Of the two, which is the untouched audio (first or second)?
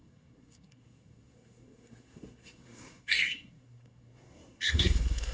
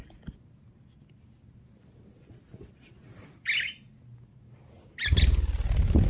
second